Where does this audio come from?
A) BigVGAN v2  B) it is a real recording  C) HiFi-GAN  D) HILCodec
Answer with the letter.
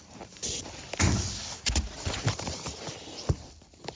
B